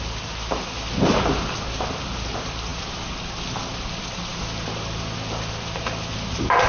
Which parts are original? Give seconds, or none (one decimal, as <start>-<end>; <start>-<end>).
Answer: 0.0-6.7